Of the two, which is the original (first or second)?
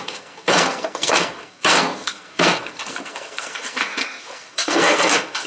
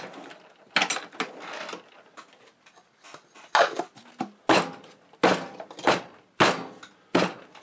second